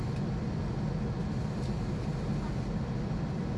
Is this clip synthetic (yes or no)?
no